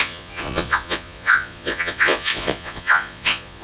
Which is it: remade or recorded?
remade